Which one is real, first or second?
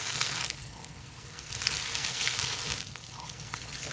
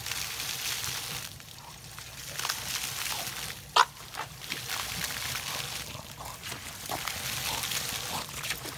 second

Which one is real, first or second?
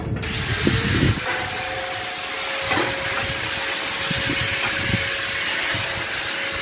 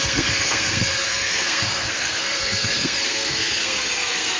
first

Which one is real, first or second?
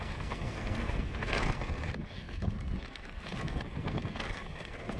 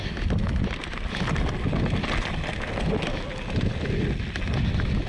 second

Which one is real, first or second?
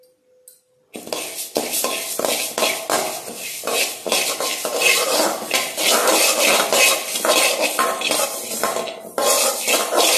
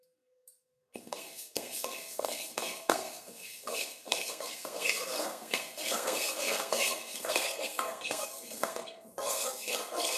first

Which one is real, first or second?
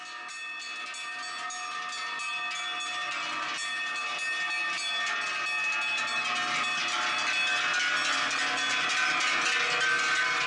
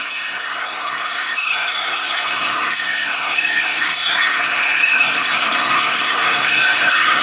first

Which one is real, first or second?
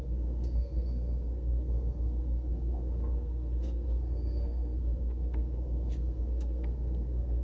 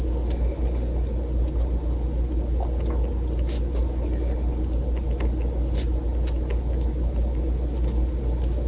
second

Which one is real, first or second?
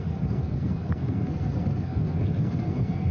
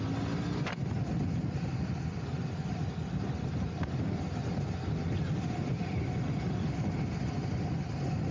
second